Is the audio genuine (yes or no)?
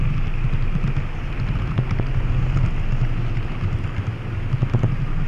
yes